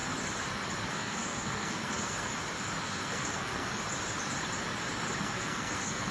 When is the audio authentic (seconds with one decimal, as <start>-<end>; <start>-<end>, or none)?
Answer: 0.0-0.9; 2.3-2.8; 3.7-5.2